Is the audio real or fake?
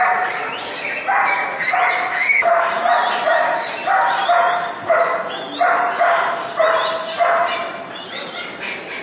real